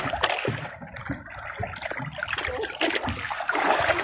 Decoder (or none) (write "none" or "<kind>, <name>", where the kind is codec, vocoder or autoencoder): none